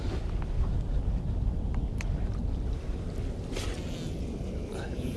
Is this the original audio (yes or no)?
yes